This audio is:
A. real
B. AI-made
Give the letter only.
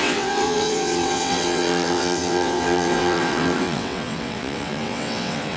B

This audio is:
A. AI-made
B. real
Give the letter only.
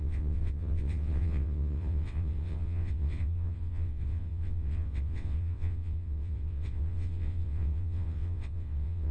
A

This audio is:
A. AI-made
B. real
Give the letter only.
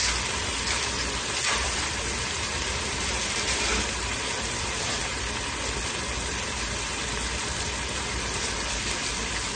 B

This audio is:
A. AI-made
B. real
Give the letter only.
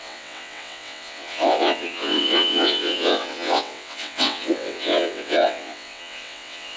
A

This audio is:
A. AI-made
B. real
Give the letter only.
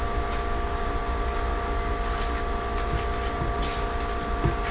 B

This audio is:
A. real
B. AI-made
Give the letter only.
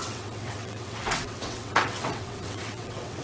B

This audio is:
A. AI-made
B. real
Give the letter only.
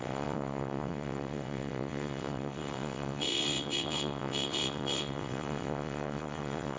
A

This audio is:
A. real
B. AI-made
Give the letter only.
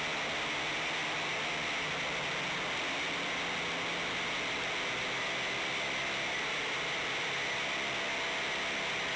A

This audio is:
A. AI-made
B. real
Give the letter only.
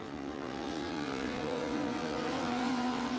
A